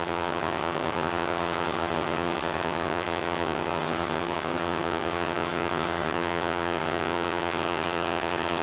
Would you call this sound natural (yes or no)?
no